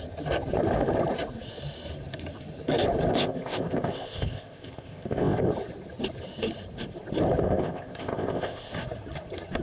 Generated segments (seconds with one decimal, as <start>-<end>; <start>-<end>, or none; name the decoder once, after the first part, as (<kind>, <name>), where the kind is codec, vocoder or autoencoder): 3.1-5.5 (codec, ZipCodec); 7.4-8.7